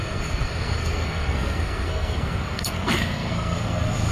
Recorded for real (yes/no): no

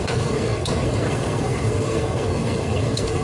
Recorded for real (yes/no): no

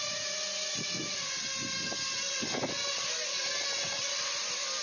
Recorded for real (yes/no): yes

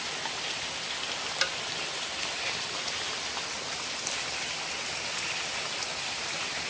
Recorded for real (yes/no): yes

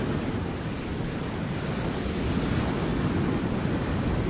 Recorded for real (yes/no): yes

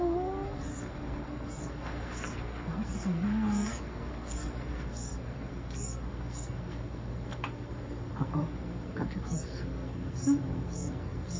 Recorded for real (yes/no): no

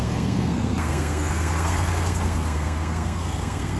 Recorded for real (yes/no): no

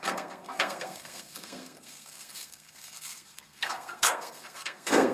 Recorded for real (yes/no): no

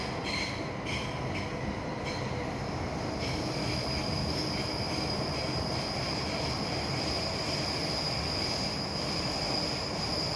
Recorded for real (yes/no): yes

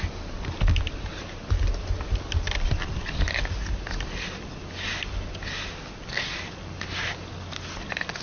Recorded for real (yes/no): yes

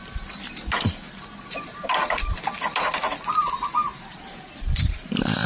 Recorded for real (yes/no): yes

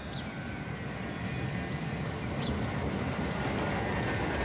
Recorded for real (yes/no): yes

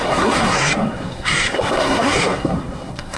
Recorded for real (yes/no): no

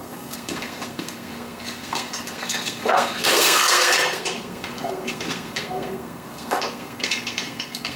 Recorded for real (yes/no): no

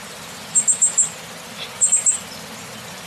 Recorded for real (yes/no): yes